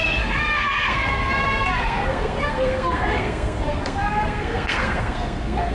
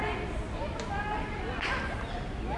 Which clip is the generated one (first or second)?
first